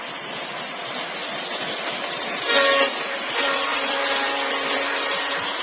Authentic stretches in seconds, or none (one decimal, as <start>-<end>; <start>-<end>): 0.0-1.2; 2.3-3.7; 5.1-5.6